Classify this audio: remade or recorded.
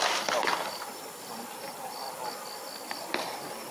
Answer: recorded